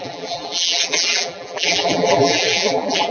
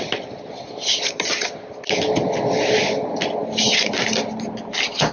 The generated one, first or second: first